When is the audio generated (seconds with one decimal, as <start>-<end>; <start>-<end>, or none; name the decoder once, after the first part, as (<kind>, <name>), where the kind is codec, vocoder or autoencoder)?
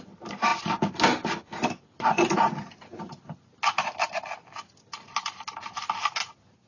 none